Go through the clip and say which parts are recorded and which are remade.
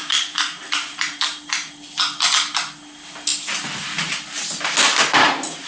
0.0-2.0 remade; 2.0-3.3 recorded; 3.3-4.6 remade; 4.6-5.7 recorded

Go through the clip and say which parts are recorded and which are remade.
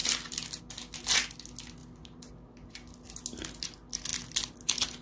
0.0-0.6 remade; 0.6-1.8 recorded; 1.8-2.3 remade; 2.3-5.0 recorded